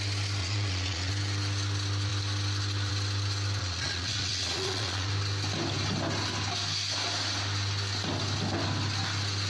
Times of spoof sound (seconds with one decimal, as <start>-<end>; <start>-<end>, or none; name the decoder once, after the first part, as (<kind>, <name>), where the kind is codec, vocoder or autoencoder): 0.4-1.1 (vocoder, Vocos); 3.6-5.1